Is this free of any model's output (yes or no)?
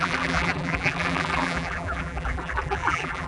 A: no